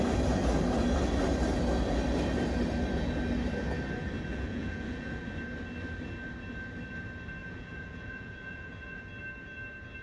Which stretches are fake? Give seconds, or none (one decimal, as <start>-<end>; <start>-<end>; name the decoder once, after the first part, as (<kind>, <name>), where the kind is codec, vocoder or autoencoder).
4.3-5.2 (vocoder, Vocos); 7.4-9.0